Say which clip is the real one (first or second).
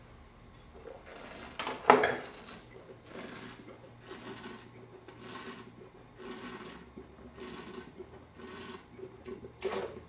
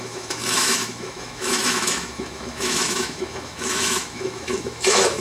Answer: first